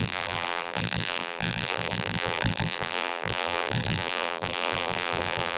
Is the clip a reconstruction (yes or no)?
yes